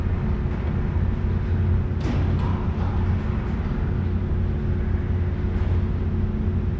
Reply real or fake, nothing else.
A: real